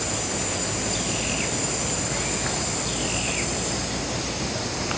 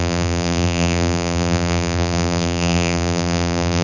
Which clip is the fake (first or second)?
second